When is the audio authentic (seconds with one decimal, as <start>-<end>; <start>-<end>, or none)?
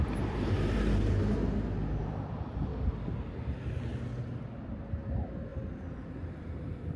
1.2-2.0; 2.7-4.2